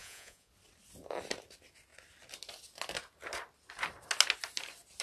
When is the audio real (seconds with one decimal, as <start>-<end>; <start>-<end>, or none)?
0.5-5.0